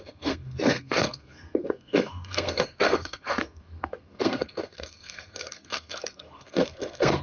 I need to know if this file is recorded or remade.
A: remade